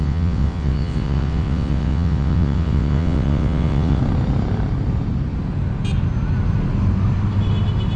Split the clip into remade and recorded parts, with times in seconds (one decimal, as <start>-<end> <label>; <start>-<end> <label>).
0.0-4.0 remade; 4.0-8.0 recorded